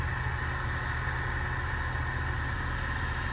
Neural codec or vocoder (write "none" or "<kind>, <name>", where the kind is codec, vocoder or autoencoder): none